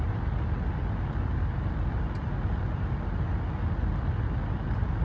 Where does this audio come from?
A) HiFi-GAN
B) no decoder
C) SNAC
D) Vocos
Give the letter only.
B